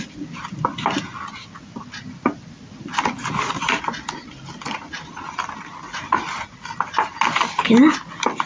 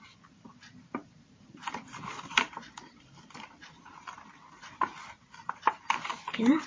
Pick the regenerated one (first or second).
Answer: second